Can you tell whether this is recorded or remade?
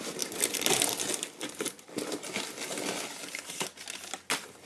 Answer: recorded